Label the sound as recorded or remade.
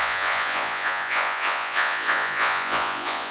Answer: remade